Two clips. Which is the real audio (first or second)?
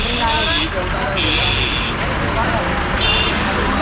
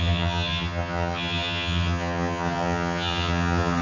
first